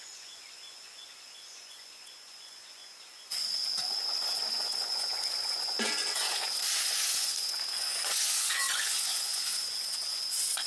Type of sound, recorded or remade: remade